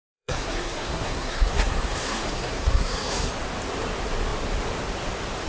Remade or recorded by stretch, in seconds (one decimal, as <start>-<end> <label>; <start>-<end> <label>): 0.0-3.3 remade; 3.3-5.5 recorded